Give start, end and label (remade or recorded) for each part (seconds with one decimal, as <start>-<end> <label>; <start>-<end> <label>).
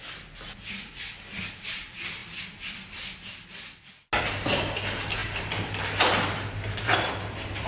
0.0-7.7 recorded